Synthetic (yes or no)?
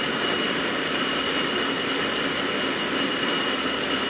no